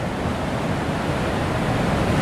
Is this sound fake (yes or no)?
no